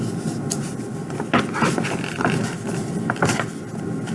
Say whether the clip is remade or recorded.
remade